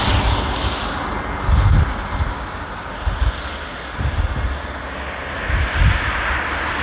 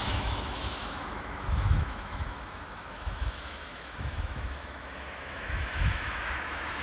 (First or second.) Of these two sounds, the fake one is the second